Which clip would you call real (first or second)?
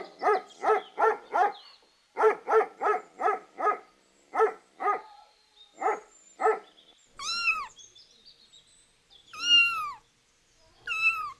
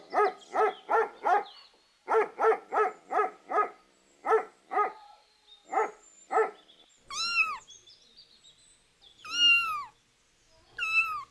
second